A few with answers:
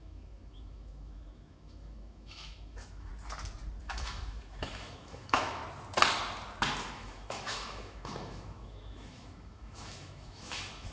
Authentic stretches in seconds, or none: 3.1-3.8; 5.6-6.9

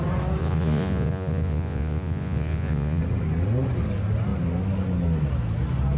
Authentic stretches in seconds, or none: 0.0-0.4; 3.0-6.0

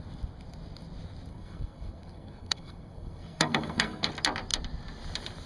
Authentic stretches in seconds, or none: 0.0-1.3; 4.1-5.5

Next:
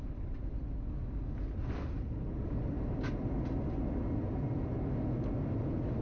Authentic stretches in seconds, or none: 0.0-1.6; 3.9-6.0

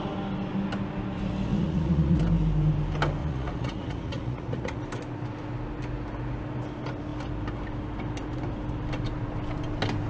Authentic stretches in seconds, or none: 0.0-1.5; 2.2-3.2; 4.8-10.1

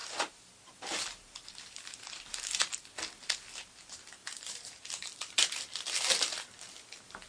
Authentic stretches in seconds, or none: 2.9-4.2; 5.3-7.3

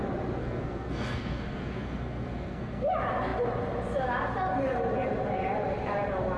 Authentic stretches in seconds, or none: 0.0-0.4; 2.9-6.4